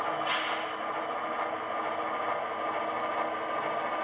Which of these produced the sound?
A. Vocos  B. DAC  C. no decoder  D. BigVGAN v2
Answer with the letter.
C